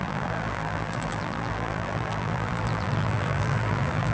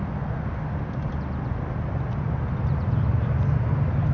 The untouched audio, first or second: second